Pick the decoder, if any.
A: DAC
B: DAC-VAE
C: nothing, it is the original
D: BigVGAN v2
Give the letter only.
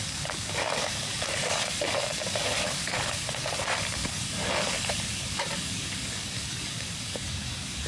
A